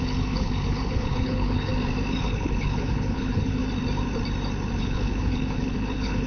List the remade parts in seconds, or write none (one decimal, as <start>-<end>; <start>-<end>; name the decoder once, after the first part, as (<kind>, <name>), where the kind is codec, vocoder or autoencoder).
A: 0.0-1.7 (codec, HILCodec); 2.2-3.6; 4.8-6.3